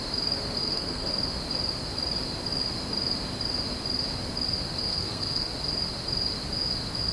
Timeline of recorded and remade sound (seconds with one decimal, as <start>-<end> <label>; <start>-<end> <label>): 0.0-0.6 recorded; 0.6-1.1 remade; 1.1-4.8 recorded; 4.8-5.5 remade; 5.5-7.1 recorded